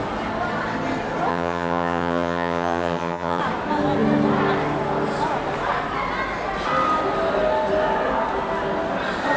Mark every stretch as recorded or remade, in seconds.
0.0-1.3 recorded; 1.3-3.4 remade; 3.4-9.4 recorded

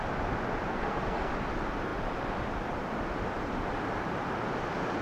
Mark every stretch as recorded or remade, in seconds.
0.0-0.7 recorded; 0.7-1.3 remade; 1.3-5.0 recorded

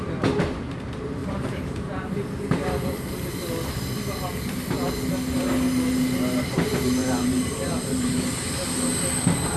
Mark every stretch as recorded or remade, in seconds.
0.0-1.2 recorded; 1.2-3.3 remade; 3.3-7.0 recorded; 7.0-8.5 remade; 8.5-9.6 recorded

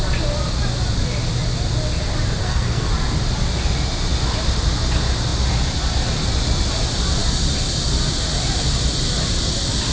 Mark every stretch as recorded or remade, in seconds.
0.0-2.4 recorded; 2.4-2.9 remade; 2.9-9.9 recorded

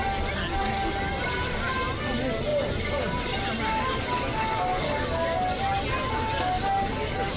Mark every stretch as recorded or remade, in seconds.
0.0-7.4 recorded

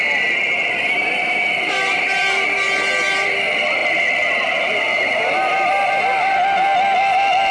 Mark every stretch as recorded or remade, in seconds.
0.0-7.5 recorded